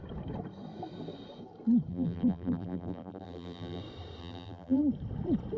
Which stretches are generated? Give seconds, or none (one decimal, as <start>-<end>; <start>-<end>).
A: 1.9-3.8; 4.2-4.8